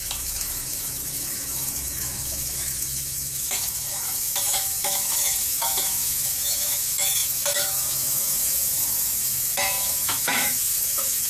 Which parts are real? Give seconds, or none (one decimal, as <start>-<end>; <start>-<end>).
none